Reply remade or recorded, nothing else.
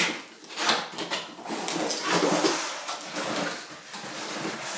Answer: recorded